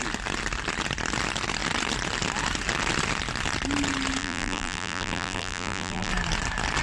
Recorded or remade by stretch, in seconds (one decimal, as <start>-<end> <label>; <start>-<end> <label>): 0.0-4.2 recorded; 4.2-6.1 remade; 6.1-6.8 recorded

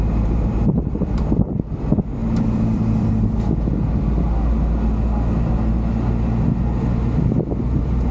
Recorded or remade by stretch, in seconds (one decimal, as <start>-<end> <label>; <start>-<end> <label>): 0.0-0.6 recorded; 0.6-1.2 remade; 1.2-2.2 recorded; 2.2-3.1 remade; 3.1-8.1 recorded

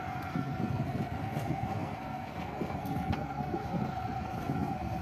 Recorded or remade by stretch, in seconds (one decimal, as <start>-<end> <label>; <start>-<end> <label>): 0.0-5.0 remade

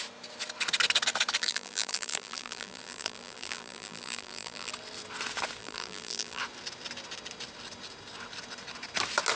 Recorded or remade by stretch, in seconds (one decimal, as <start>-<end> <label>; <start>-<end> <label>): 0.0-1.4 recorded; 1.4-4.7 remade; 4.7-5.6 recorded; 5.6-6.4 remade; 6.4-9.4 recorded

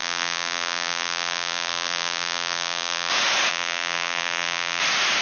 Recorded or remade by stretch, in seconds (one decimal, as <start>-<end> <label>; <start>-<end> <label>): 0.0-3.1 remade; 3.1-3.5 recorded; 3.5-4.8 remade; 4.8-5.2 recorded

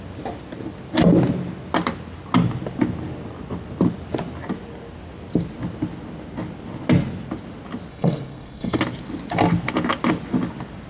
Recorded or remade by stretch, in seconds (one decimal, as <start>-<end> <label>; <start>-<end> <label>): 0.0-7.9 recorded; 7.9-8.8 remade; 8.8-10.9 recorded

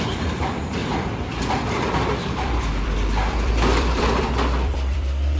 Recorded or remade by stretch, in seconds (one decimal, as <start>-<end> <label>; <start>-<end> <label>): 0.0-5.4 remade

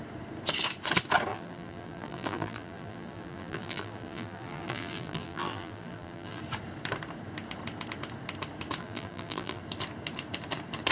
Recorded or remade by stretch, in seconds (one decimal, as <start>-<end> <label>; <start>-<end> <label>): 0.0-1.3 recorded; 1.3-6.4 remade; 6.4-8.8 recorded; 8.8-9.6 remade; 9.6-10.9 recorded